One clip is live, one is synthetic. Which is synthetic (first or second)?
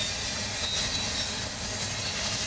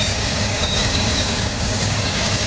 second